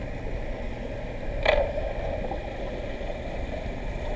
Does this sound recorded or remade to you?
recorded